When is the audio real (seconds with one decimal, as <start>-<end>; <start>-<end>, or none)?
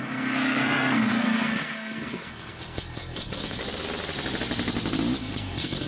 3.6-5.2